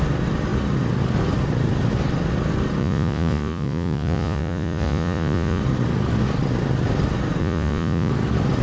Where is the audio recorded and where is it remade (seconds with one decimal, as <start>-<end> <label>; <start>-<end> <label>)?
0.0-2.8 recorded; 2.8-5.6 remade; 5.6-7.4 recorded; 7.4-8.1 remade; 8.1-8.6 recorded